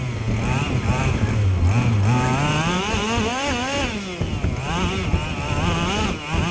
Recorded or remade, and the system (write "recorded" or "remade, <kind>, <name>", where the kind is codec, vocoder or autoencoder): recorded